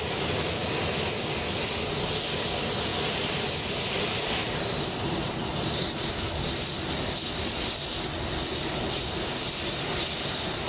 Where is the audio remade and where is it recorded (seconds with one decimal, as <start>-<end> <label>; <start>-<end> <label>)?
0.0-2.9 recorded; 2.9-4.0 remade; 4.0-4.4 recorded; 4.4-6.4 remade; 6.4-10.7 recorded

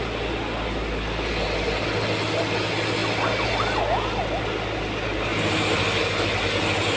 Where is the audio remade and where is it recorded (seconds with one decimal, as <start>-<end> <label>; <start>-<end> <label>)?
0.0-7.0 recorded

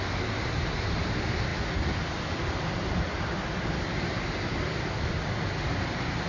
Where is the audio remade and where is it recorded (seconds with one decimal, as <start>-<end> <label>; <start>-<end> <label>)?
0.0-6.3 recorded

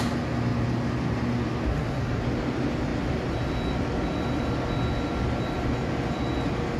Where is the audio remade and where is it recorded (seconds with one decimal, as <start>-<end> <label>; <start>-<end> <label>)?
0.0-1.7 recorded; 1.7-2.2 remade; 2.2-6.8 recorded

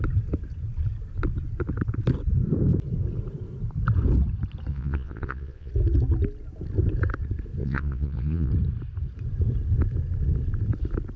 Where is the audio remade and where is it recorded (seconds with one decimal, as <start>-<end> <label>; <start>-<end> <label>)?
0.0-4.7 recorded; 4.7-5.7 remade; 5.7-7.6 recorded; 7.6-8.5 remade; 8.5-11.2 recorded

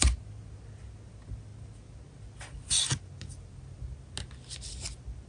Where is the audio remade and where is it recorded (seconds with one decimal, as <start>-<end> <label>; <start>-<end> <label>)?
0.0-5.3 recorded

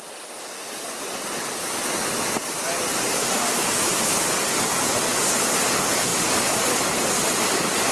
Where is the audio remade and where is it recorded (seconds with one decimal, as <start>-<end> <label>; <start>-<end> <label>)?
0.0-3.2 recorded; 3.2-3.7 remade; 3.7-7.9 recorded

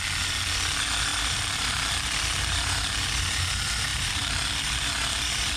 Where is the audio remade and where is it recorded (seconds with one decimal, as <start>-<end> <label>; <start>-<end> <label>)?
0.0-1.1 recorded; 1.1-1.8 remade; 1.8-3.9 recorded; 3.9-4.4 remade; 4.4-5.6 recorded